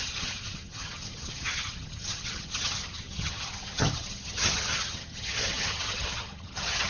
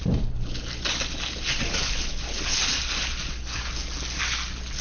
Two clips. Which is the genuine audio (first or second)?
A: second